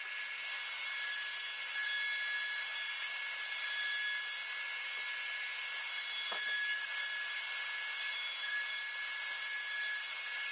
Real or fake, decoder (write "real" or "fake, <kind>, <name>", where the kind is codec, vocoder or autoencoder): real